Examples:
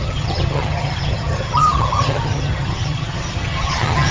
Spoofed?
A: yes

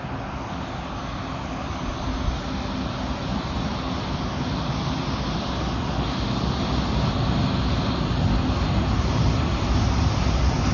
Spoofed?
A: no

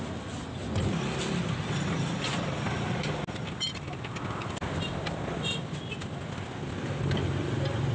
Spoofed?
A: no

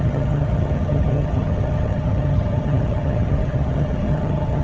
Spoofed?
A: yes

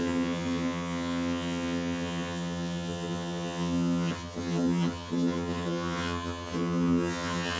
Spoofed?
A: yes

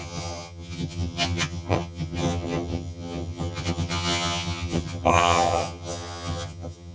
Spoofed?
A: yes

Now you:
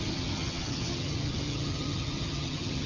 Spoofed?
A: yes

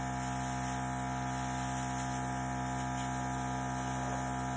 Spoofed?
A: no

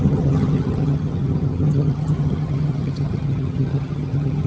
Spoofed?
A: yes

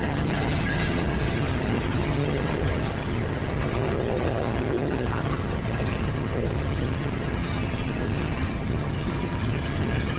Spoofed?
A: yes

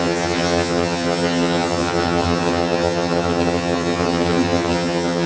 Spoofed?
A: yes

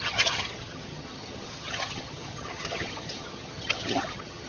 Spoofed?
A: yes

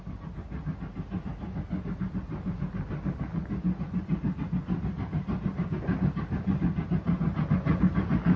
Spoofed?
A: no